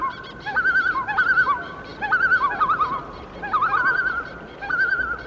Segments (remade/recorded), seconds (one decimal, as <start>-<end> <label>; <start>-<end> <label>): 0.0-5.3 recorded